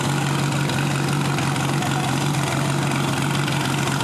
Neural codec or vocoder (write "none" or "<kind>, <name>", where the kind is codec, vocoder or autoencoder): none